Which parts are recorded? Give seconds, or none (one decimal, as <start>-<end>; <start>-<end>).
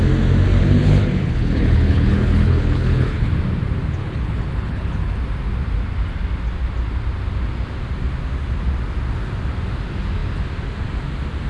0.0-0.6; 3.3-4.0; 5.2-11.5